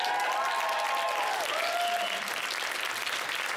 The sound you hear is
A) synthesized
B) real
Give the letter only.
B